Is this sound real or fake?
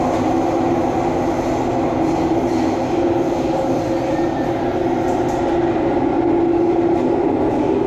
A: real